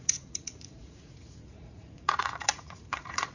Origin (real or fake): fake